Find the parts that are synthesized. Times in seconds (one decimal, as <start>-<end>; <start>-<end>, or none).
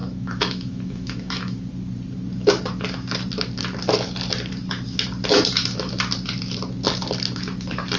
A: 0.0-1.6